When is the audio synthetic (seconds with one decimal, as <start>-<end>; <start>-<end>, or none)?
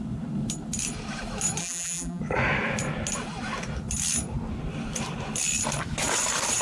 1.6-2.2